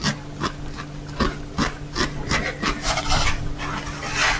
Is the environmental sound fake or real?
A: real